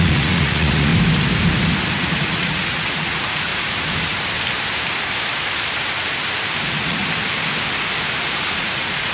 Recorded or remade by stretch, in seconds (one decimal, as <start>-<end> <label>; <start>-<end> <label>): 0.0-0.9 remade; 0.9-2.0 recorded; 2.0-3.5 remade; 3.5-6.6 recorded; 6.6-7.0 remade; 7.0-8.6 recorded; 8.6-9.1 remade